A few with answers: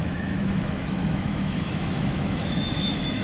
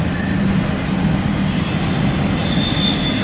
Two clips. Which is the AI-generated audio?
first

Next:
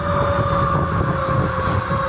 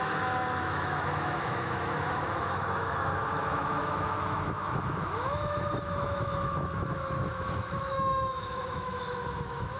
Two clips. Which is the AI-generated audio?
second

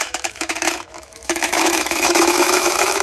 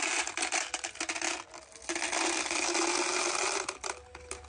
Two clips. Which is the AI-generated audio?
first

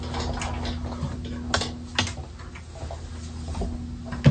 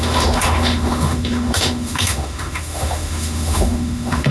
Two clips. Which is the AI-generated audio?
second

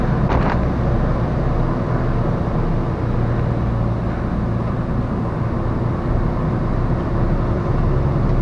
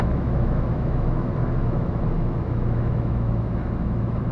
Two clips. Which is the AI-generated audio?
second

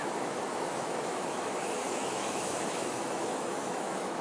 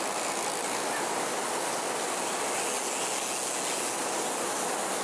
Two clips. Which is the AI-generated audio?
first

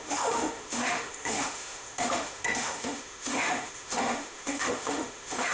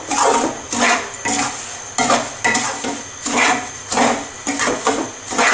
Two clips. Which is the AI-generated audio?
first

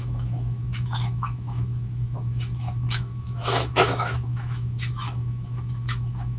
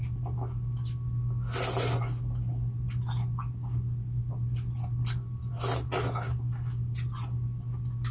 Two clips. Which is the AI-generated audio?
first